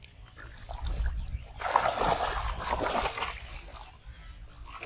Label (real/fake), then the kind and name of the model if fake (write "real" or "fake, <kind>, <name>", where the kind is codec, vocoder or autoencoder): real